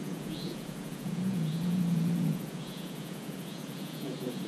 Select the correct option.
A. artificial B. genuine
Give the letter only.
A